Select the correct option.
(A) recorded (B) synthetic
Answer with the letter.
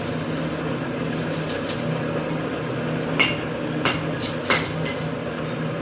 A